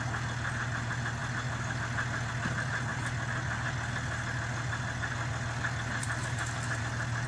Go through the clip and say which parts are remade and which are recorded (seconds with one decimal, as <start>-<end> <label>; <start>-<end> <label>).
0.0-7.3 recorded